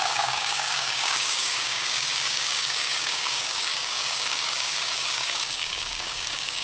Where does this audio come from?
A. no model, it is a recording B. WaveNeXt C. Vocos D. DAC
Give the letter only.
D